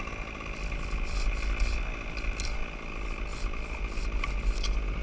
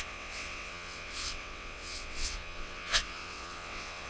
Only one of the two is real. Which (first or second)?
first